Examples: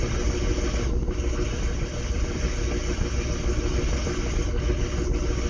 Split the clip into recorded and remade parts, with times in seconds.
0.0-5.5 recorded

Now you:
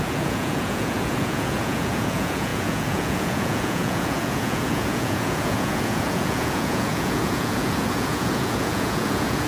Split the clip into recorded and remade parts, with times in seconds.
0.0-9.5 remade

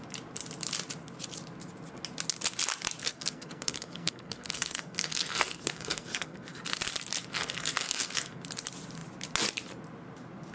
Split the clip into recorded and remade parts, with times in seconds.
0.0-3.0 recorded; 3.0-6.6 remade; 6.6-7.2 recorded; 7.2-8.4 remade; 8.4-10.5 recorded

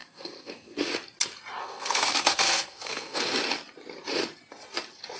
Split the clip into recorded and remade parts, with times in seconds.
0.0-0.9 remade; 0.9-1.6 recorded; 1.6-3.2 remade; 3.2-5.2 recorded

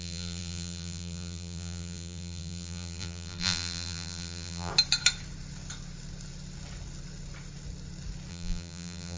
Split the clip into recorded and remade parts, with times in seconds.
0.0-4.7 remade; 4.7-8.3 recorded; 8.3-9.2 remade

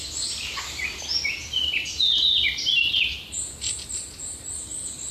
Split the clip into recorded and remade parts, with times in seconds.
0.0-5.1 recorded

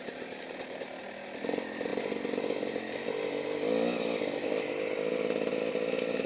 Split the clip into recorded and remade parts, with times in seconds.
0.0-6.3 recorded

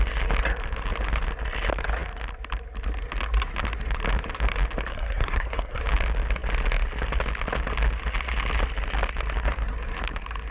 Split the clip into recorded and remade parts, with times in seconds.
0.0-4.9 recorded; 4.9-5.8 remade; 5.8-10.5 recorded